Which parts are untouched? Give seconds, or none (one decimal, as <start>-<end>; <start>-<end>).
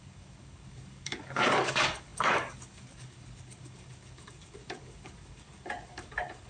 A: none